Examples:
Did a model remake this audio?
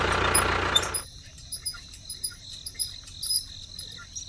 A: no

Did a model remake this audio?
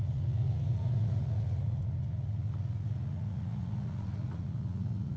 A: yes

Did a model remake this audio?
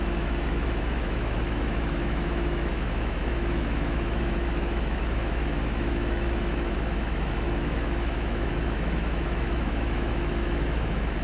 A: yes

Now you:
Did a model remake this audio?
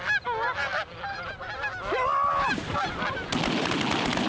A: no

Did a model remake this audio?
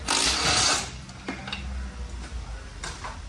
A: no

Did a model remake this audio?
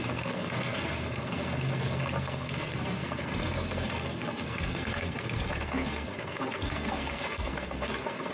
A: yes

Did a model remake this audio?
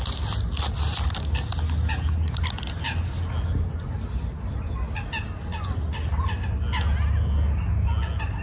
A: no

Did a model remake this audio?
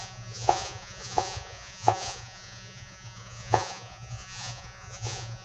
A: yes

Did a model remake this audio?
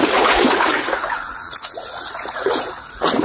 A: yes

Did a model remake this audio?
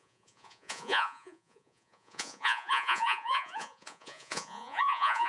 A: yes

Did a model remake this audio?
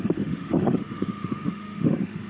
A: yes